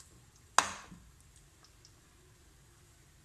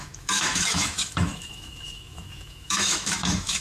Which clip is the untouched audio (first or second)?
first